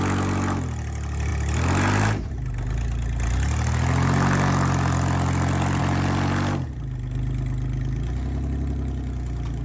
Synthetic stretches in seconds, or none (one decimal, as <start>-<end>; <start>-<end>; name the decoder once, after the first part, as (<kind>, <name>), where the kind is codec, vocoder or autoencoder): none